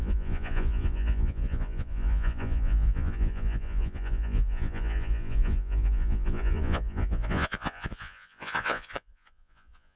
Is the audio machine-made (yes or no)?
yes